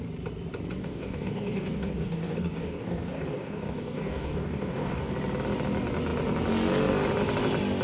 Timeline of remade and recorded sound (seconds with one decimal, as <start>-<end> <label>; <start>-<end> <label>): 0.0-0.8 recorded; 0.8-5.1 remade; 5.1-7.8 recorded